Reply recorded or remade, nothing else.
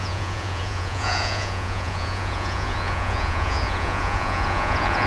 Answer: remade